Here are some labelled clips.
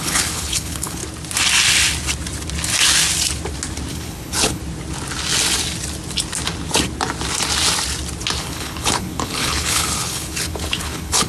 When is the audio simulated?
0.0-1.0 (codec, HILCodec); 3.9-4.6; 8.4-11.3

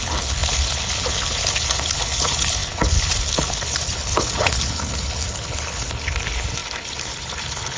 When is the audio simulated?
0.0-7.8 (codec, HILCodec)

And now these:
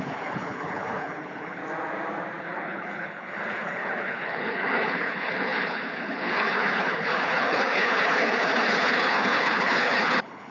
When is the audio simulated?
0.0-1.6 (codec, HILCodec); 2.4-10.5

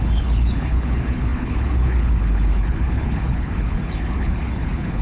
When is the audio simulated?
0.0-5.0 (codec, HILCodec)